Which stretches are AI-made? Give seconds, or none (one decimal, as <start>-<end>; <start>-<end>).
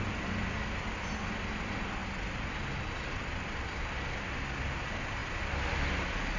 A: none